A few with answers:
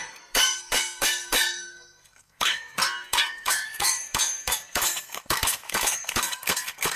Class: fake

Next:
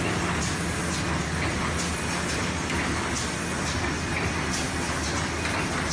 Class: real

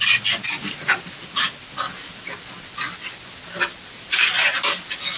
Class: real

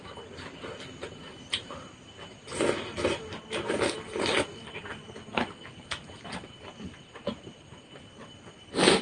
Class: real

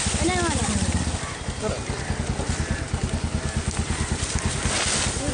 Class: real